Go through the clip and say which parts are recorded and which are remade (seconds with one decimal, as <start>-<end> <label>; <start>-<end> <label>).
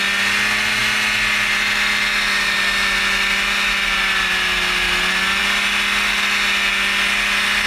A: 0.0-7.7 recorded